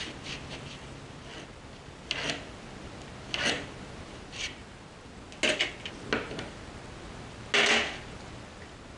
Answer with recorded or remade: recorded